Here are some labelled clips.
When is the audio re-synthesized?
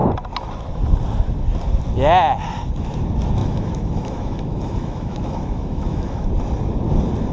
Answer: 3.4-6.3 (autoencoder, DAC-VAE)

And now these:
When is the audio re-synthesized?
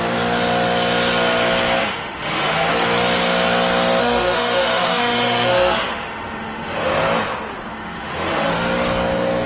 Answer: 1.8-2.7 (autoencoder, DAC-VAE); 4.0-6.9; 7.7-8.5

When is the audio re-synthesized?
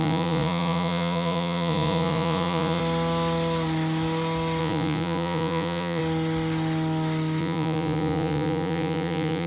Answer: 0.0-2.8 (vocoder, Vocos); 4.6-6.0; 7.4-9.5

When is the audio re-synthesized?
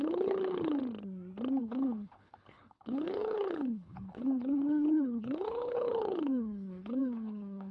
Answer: 0.0-0.8 (codec, HILCodec); 1.6-7.7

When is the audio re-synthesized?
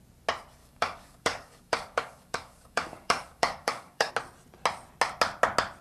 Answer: 0.6-4.1 (codec, DAC)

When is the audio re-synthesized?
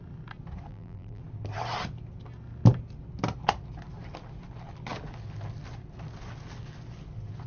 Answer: 0.7-1.2 (vocoder, BigVGAN v2)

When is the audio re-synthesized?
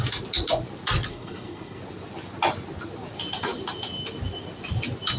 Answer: 1.1-1.8 (codec, SNAC)